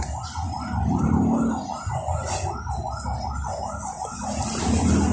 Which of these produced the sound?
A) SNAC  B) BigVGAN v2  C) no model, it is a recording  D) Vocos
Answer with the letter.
C